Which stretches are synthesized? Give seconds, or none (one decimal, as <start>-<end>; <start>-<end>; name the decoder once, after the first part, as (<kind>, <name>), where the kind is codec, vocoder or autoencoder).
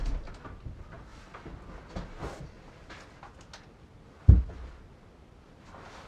none